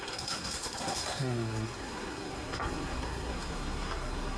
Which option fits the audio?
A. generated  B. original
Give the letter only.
A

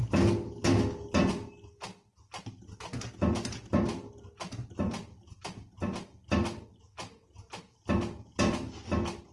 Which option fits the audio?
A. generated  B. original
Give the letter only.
B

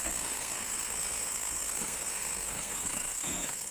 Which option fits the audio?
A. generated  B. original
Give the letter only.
A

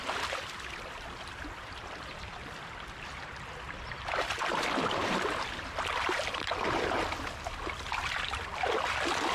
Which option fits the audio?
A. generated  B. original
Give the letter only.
B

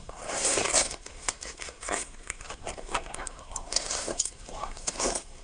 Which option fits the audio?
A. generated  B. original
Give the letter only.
A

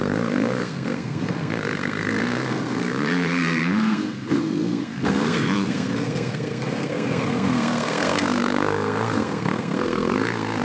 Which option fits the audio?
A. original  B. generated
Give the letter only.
B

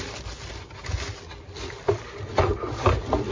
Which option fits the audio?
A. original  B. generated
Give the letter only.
A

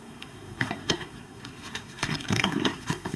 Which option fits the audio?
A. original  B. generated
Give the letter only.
B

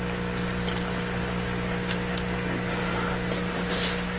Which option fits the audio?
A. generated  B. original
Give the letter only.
B